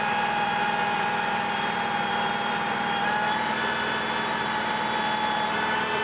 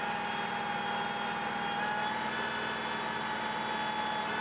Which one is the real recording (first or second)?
second